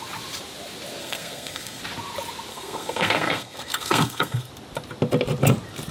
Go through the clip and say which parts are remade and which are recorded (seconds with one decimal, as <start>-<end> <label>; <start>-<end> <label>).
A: 0.0-1.0 recorded; 1.0-1.8 remade; 1.8-2.5 recorded; 2.5-4.5 remade; 4.5-5.9 recorded